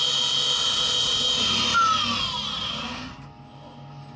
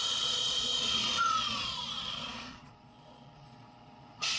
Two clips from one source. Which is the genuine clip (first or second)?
first